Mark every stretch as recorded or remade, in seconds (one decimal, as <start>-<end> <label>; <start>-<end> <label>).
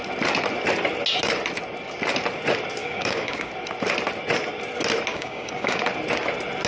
0.0-2.8 recorded; 2.8-3.5 remade; 3.5-5.1 recorded; 5.1-5.8 remade; 5.8-6.7 recorded